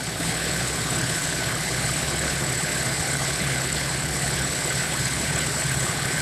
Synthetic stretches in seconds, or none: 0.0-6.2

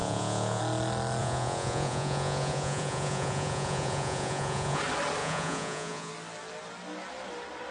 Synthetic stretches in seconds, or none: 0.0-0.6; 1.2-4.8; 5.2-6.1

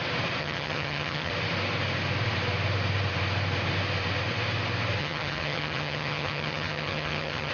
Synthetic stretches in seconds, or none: 0.4-1.3; 5.0-7.5

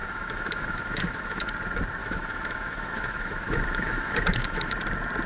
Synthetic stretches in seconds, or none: 0.0-1.5; 2.0-4.7

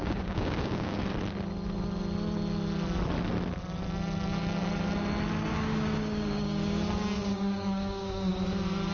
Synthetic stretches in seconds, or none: 0.0-1.0; 5.5-8.3

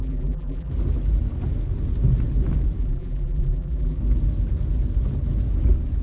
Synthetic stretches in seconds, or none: 0.0-0.7; 2.8-4.0